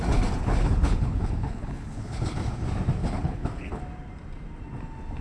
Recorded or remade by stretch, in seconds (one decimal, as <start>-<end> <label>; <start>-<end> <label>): 0.0-0.4 recorded; 0.4-2.4 remade; 2.4-3.0 recorded; 3.0-3.8 remade; 3.8-5.2 recorded